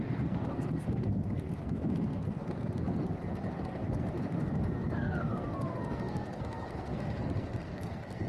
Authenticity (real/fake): fake